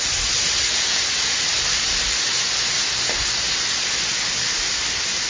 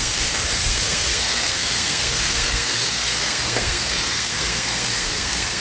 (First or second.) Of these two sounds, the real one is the first